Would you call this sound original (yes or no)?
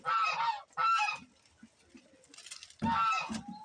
yes